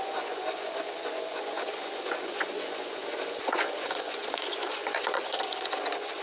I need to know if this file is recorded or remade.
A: remade